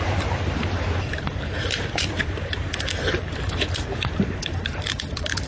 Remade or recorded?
remade